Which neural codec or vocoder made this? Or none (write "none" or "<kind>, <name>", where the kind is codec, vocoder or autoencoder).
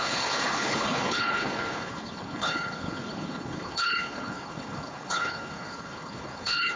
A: codec, HILCodec